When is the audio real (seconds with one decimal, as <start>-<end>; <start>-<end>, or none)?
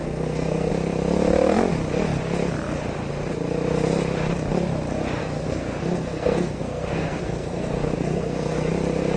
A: 0.7-5.2; 8.7-9.2